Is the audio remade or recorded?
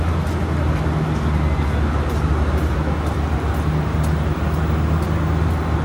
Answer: recorded